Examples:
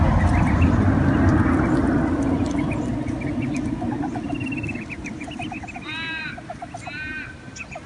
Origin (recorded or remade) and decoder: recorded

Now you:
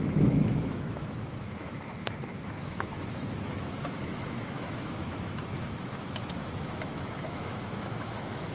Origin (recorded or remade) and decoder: remade, autoencoder, DAC-VAE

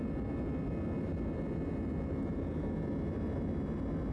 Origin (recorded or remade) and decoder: recorded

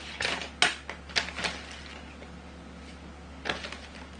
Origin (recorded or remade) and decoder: recorded